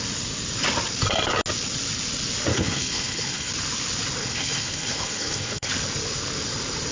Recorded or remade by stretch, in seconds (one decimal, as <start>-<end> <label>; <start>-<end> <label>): 0.0-2.5 recorded; 2.5-3.5 remade; 3.5-4.2 recorded; 4.2-5.7 remade; 5.7-6.9 recorded